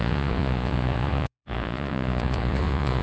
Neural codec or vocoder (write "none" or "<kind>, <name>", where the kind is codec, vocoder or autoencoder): vocoder, Vocos